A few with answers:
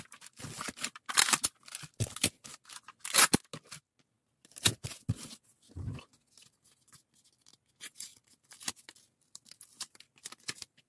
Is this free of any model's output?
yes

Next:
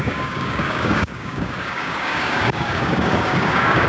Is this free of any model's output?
no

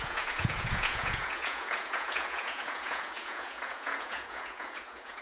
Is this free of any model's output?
no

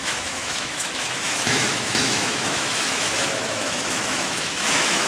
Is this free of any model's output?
no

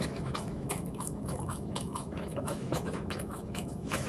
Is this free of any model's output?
no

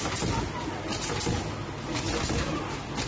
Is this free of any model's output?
yes